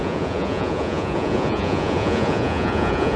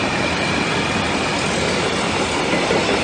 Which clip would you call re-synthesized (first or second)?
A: first